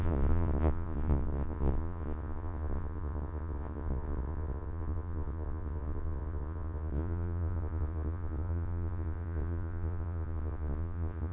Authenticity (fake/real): fake